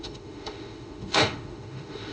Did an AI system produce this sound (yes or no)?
yes